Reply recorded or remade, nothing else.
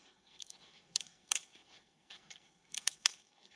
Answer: remade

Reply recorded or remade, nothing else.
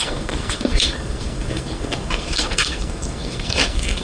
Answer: remade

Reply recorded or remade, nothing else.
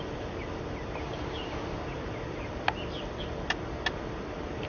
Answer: recorded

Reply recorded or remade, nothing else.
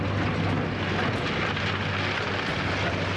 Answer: recorded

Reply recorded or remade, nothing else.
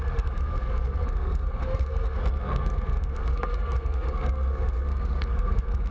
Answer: remade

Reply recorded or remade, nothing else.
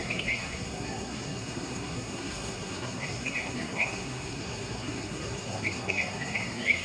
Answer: remade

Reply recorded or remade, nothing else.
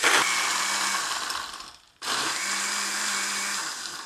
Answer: recorded